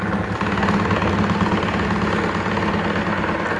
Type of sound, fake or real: real